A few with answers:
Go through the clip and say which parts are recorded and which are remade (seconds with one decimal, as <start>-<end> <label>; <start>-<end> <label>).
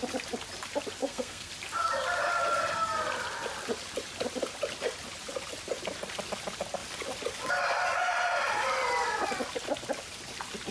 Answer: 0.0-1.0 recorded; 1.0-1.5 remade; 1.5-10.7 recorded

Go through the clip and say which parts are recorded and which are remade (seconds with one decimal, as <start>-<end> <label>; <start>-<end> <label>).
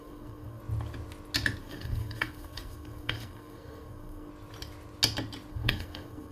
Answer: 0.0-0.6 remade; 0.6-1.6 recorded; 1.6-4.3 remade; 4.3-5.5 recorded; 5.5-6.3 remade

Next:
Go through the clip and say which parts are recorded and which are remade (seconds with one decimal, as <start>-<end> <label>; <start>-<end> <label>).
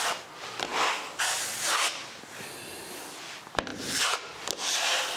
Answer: 0.0-5.2 recorded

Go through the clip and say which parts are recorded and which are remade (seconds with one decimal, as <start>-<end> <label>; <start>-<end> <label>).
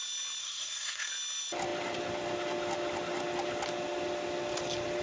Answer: 0.0-0.4 recorded; 0.4-1.1 remade; 1.1-5.0 recorded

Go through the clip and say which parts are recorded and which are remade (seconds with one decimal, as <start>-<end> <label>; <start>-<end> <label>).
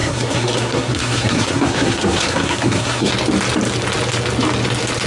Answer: 0.0-3.1 remade; 3.1-5.1 recorded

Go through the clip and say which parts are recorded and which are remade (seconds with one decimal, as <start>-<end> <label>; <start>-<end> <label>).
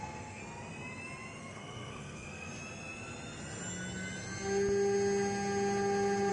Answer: 0.0-0.4 remade; 0.4-1.4 recorded; 1.4-2.5 remade; 2.5-6.3 recorded